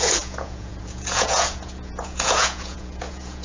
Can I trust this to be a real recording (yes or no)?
no